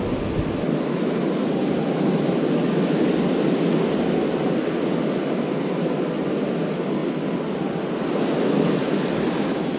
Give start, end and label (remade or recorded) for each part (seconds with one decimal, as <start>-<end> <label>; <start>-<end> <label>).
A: 0.0-9.8 recorded